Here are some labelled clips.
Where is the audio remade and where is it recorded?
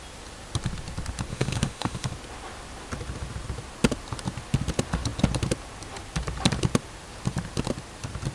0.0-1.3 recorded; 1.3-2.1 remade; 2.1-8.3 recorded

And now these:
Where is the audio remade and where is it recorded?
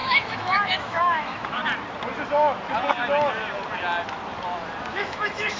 0.0-1.6 remade; 1.6-4.9 recorded; 4.9-5.6 remade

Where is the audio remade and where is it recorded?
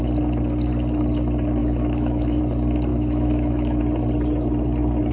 0.0-1.6 recorded; 1.6-2.4 remade; 2.4-2.9 recorded; 2.9-3.8 remade; 3.8-5.1 recorded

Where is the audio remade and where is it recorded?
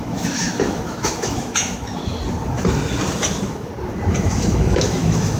0.0-2.0 remade; 2.0-3.3 recorded; 3.3-3.7 remade; 3.7-4.2 recorded; 4.2-5.4 remade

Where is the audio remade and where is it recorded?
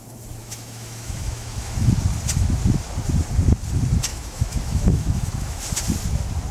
0.0-0.4 recorded; 0.4-1.9 remade; 1.9-4.1 recorded; 4.1-5.6 remade; 5.6-6.5 recorded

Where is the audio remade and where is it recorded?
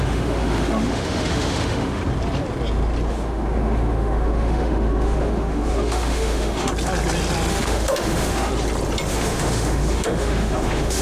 0.0-2.0 remade; 2.0-3.1 recorded; 3.1-6.7 remade; 6.7-7.5 recorded; 7.5-8.5 remade; 8.5-9.1 recorded; 9.1-11.0 remade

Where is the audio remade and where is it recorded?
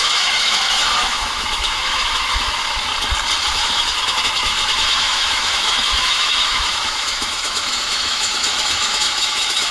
0.0-2.9 remade; 2.9-3.5 recorded; 3.5-9.7 remade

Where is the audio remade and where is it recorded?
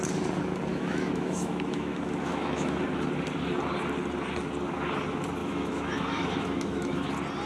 0.0-0.7 recorded; 0.7-2.8 remade; 2.8-5.4 recorded; 5.4-7.1 remade; 7.1-7.5 recorded